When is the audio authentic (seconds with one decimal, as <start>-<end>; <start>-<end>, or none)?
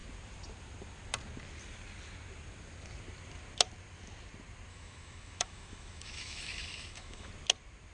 0.0-4.7; 7.3-7.9